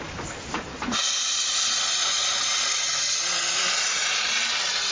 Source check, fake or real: real